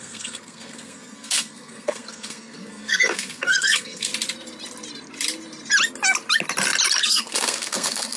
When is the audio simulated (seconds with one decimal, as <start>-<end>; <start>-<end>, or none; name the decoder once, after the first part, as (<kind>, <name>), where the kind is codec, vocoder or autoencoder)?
0.0-4.1 (codec, SNAC); 7.0-8.2